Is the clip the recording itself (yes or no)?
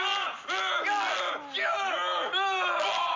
yes